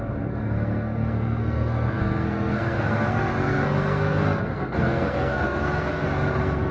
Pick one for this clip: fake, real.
fake